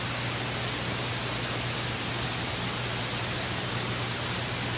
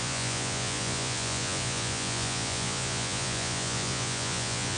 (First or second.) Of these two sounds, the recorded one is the first